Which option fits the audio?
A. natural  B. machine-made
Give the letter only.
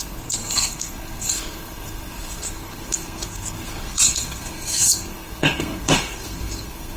B